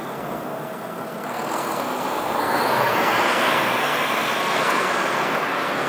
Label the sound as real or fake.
fake